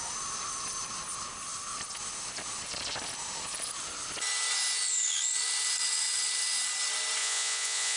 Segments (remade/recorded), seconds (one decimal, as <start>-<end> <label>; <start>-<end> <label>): 0.0-7.2 recorded; 7.2-8.0 remade